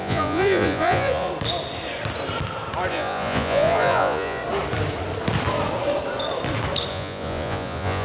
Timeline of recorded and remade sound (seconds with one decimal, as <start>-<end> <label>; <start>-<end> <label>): 0.0-1.3 remade; 1.3-2.9 recorded; 2.9-4.4 remade; 4.4-6.9 recorded; 6.9-8.0 remade